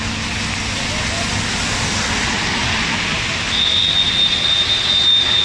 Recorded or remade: recorded